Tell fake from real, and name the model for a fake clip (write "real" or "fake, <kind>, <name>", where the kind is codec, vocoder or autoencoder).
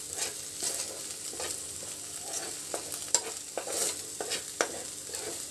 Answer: real